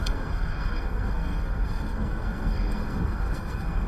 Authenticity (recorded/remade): remade